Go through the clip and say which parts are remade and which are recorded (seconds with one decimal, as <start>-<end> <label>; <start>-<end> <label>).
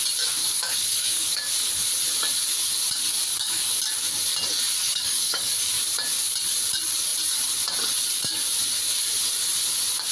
0.0-0.4 recorded; 0.4-1.5 remade; 1.5-3.3 recorded; 3.3-3.8 remade; 3.8-4.8 recorded; 4.8-5.7 remade; 5.7-10.1 recorded